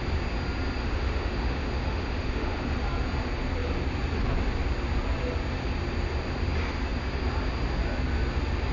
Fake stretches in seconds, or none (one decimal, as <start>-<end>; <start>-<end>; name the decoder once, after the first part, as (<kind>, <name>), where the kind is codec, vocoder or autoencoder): 0.8-2.8 (autoencoder, DAC-VAE)